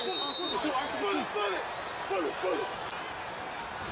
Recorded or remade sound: recorded